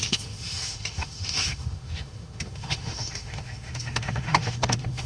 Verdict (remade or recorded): remade